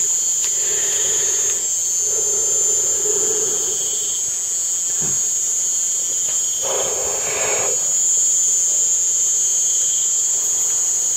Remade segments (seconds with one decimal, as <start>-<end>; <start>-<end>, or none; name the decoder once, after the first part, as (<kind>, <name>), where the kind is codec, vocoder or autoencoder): none